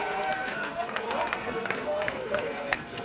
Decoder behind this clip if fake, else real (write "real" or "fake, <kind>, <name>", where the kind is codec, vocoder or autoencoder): fake, codec, SNAC